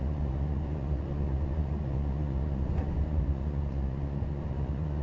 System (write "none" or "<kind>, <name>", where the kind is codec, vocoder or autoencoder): vocoder, Vocos